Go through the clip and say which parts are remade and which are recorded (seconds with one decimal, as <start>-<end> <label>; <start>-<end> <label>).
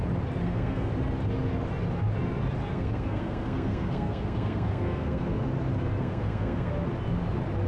0.0-0.4 recorded; 0.4-0.9 remade; 0.9-2.7 recorded; 2.7-5.4 remade; 5.4-6.0 recorded; 6.0-6.7 remade; 6.7-7.7 recorded